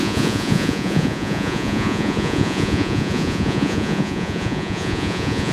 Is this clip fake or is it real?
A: fake